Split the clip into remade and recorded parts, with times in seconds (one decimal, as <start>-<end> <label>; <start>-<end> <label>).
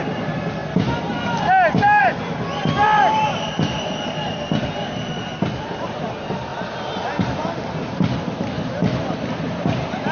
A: 0.0-10.1 recorded